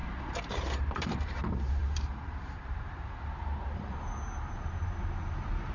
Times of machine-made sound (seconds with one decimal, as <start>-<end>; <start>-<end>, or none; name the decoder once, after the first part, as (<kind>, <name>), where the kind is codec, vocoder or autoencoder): 0.0-5.7 (vocoder, BigVGAN v2)